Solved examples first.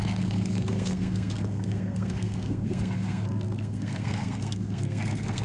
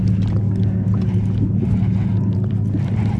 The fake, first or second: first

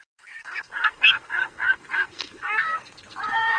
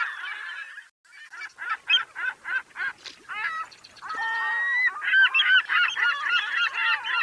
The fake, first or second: first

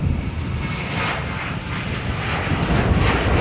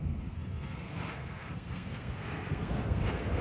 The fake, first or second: second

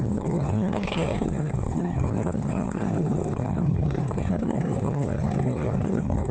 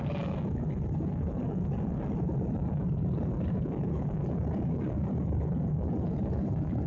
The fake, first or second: first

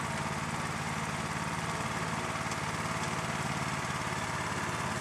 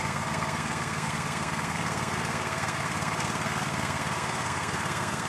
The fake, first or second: second